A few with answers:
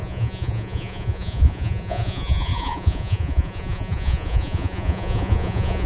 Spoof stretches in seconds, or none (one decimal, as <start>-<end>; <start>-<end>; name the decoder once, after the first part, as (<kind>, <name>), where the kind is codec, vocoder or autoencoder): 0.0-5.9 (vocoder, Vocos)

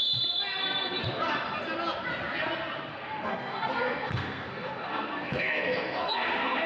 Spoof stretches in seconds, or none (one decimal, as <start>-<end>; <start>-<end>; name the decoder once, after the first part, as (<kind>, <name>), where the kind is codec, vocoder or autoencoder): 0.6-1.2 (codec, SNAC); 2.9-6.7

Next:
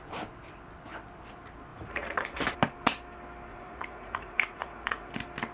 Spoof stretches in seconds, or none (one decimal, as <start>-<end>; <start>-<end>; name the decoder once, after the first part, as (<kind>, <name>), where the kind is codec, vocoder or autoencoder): 1.7-2.4 (vocoder, Vocos); 3.5-5.1

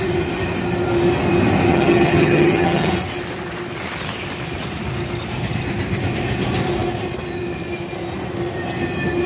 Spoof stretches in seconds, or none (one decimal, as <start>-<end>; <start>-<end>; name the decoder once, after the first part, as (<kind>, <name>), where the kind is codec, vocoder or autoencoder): 1.7-2.9 (vocoder, HiFi-GAN)

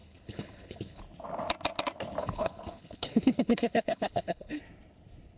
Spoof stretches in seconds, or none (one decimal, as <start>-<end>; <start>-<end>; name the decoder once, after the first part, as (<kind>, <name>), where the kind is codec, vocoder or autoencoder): 0.0-1.0 (codec, HILCodec); 2.2-4.6

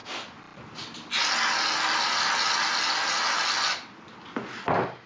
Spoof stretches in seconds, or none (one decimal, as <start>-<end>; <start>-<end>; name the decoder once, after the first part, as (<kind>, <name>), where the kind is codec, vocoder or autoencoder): none

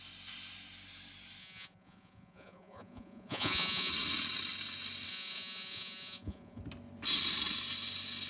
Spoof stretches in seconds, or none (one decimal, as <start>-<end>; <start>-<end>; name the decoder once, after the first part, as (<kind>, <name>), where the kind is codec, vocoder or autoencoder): 1.4-3.9 (vocoder, Vocos); 5.1-6.6

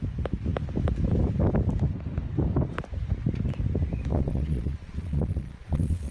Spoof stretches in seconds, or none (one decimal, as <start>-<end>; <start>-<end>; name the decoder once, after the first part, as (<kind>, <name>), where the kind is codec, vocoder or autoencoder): 4.1-6.1 (vocoder, Vocos)